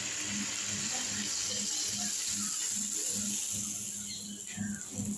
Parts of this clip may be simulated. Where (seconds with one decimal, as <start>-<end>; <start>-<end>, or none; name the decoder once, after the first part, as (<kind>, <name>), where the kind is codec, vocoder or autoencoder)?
none